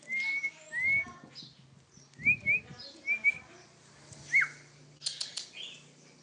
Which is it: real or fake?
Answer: real